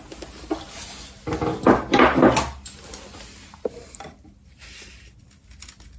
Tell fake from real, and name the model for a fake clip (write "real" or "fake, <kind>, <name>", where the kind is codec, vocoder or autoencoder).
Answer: real